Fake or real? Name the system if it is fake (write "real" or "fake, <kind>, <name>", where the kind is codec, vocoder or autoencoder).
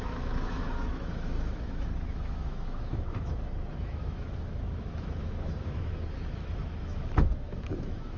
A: fake, autoencoder, DAC-VAE